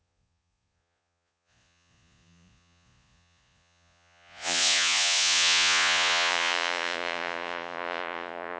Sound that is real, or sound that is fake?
fake